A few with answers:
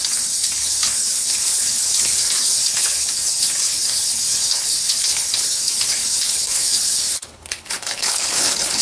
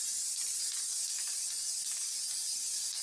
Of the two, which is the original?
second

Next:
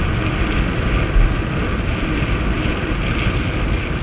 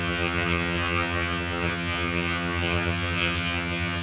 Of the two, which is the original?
first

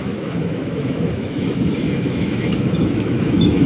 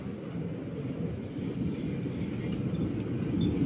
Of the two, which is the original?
second